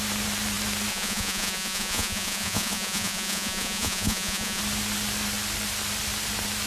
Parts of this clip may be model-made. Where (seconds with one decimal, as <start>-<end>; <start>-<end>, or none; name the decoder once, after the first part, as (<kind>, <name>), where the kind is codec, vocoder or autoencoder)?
0.9-4.6 (vocoder, Vocos)